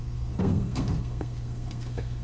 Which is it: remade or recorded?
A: remade